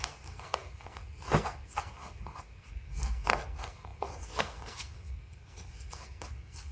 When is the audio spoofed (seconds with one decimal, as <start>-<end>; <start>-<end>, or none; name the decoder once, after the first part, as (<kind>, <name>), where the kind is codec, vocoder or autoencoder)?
0.0-6.7 (codec, SNAC)